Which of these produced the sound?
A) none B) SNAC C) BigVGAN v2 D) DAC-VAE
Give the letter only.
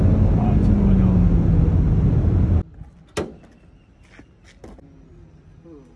A